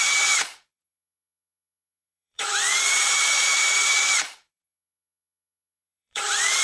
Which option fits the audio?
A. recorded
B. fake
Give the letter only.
B